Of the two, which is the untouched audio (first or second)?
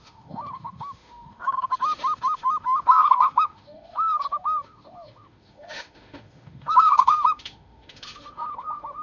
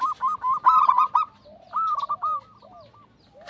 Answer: second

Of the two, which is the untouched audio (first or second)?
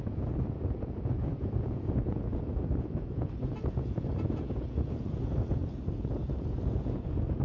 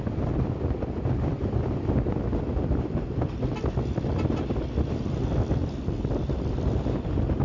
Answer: second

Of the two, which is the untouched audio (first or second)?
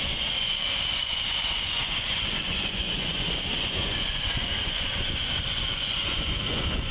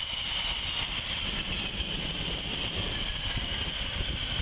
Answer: second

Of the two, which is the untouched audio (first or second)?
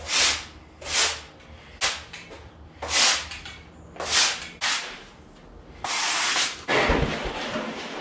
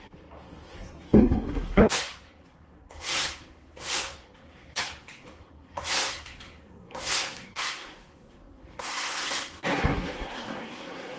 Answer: first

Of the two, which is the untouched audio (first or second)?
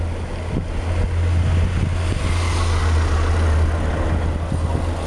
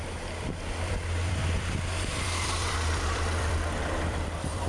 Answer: first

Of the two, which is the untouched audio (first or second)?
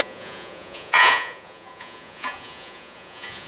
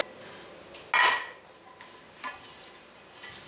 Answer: second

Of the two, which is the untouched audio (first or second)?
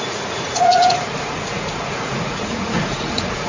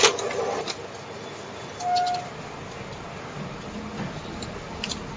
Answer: second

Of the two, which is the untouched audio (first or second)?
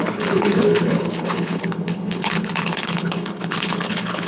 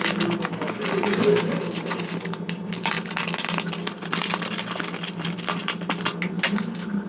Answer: second